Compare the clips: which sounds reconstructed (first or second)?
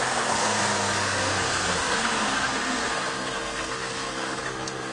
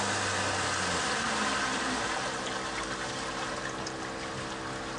first